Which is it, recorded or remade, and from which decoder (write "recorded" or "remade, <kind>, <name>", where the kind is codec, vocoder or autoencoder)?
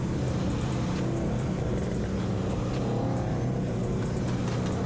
recorded